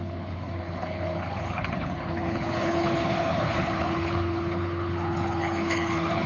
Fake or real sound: fake